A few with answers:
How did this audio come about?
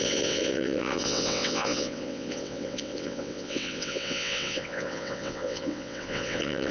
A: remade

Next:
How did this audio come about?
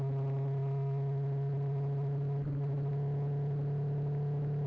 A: recorded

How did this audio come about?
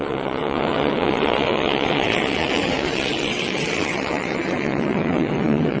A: remade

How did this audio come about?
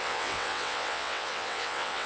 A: remade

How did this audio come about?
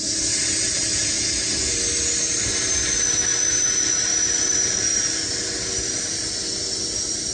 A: recorded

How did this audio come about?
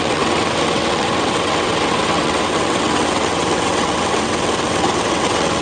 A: remade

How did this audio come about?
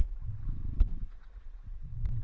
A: remade